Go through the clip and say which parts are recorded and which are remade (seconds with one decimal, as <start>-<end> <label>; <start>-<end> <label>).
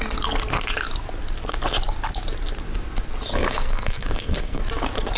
0.0-3.3 recorded; 3.3-4.6 remade; 4.6-5.2 recorded